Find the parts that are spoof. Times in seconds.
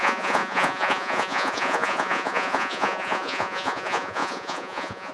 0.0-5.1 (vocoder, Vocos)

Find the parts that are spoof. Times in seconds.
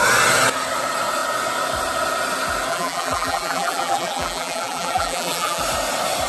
2.7-5.6 (vocoder, BigVGAN v2)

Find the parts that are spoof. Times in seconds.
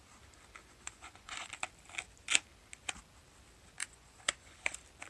0.6-1.5 (vocoder, Vocos); 3.8-4.6